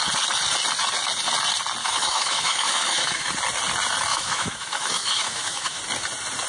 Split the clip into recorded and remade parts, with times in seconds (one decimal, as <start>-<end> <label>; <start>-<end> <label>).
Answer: 0.0-1.8 recorded; 1.8-3.3 remade; 3.3-4.1 recorded; 4.1-5.8 remade; 5.8-6.5 recorded